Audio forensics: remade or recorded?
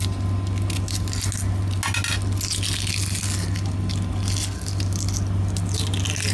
recorded